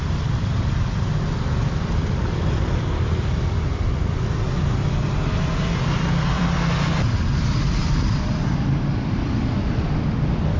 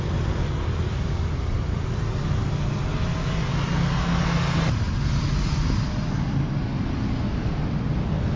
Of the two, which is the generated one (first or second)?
first